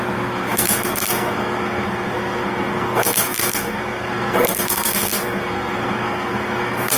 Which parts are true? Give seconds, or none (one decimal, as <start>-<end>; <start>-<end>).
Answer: none